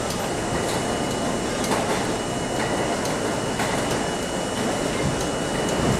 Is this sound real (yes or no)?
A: yes